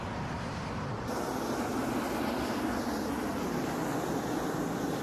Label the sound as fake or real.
real